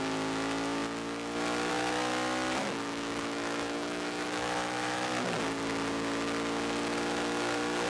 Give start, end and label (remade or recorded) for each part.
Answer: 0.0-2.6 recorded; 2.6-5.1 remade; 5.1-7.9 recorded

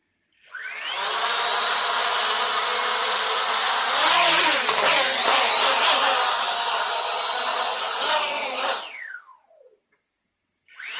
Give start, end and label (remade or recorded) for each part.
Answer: 0.0-3.0 recorded; 3.0-4.7 remade; 4.7-7.5 recorded; 7.5-8.6 remade; 8.6-11.0 recorded

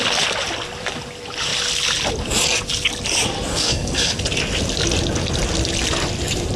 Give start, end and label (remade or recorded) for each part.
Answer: 0.0-3.5 recorded; 3.5-4.2 remade; 4.2-6.6 recorded

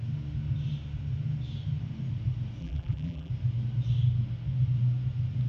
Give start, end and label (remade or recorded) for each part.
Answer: 0.0-2.6 recorded; 2.6-3.3 remade; 3.3-5.5 recorded

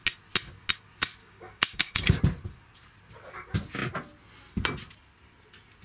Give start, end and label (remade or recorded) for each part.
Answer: 0.0-1.2 recorded; 1.2-2.2 remade; 2.2-5.8 recorded

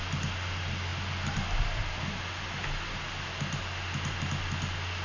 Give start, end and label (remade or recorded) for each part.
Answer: 0.0-5.0 recorded